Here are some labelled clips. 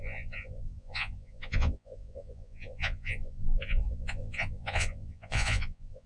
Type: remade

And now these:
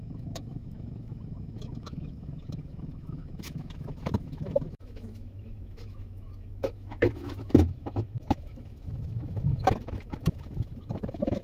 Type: remade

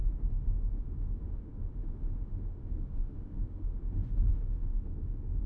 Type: remade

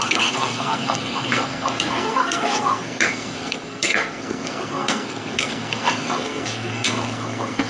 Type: remade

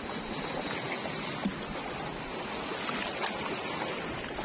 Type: recorded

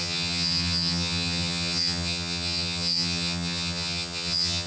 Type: remade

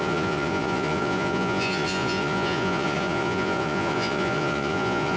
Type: remade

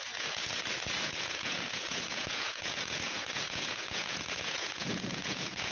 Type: remade